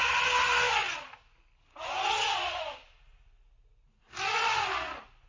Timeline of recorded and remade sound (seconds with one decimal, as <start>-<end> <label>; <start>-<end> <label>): 0.0-5.3 recorded